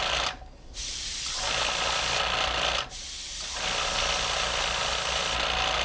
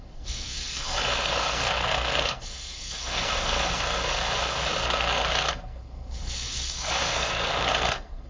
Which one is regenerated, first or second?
second